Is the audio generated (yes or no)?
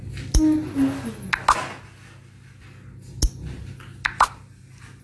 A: no